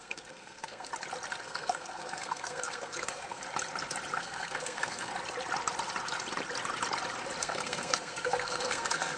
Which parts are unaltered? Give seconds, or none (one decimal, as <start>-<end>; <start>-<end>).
0.9-1.4; 3.4-4.2; 5.1-7.4

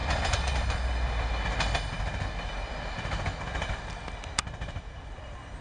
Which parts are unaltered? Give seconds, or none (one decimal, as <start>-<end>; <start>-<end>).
0.0-5.6

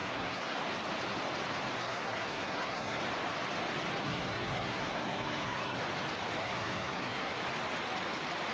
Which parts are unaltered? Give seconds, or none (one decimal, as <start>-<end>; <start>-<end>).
0.6-1.8; 3.0-4.0; 5.8-6.4; 7.3-8.5

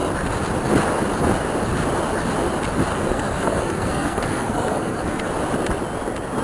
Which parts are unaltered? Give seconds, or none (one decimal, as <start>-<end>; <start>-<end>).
0.0-2.9; 5.3-6.4

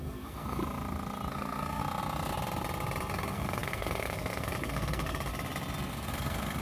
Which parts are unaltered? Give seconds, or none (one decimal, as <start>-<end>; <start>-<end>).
0.6-1.3; 1.8-3.1; 5.3-5.9